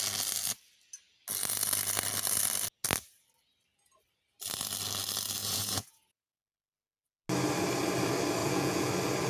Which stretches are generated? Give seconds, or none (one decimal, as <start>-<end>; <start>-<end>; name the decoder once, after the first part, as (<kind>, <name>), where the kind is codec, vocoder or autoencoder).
5.4-6.4 (vocoder, Vocos); 8.4-8.9